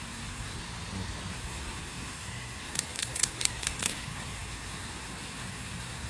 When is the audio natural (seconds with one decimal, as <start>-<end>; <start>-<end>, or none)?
0.6-1.3